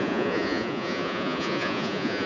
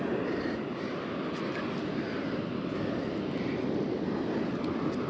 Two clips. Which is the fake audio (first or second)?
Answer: first